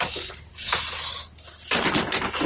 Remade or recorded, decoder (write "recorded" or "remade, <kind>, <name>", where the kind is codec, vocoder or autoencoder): recorded